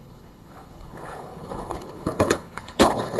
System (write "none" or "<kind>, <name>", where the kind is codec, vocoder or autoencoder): codec, HILCodec